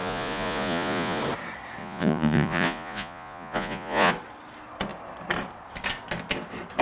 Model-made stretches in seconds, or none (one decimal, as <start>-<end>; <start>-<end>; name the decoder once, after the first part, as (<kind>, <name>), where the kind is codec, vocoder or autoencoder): 0.0-1.2 (vocoder, Vocos); 1.8-4.1